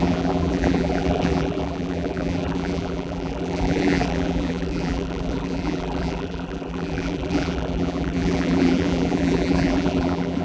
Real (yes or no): no